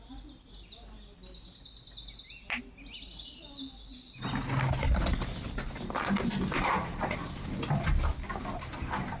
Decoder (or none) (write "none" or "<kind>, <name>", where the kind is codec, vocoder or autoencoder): none